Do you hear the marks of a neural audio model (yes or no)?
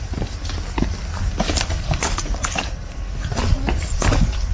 no